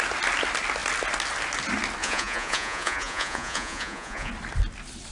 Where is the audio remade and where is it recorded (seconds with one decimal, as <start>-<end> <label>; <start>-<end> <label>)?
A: 0.0-2.0 recorded; 2.0-4.3 remade; 4.3-5.1 recorded